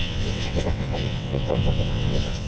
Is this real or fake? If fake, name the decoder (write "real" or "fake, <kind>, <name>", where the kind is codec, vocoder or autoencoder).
fake, vocoder, WaveNeXt